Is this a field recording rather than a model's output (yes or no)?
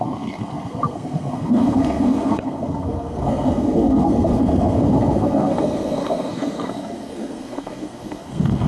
no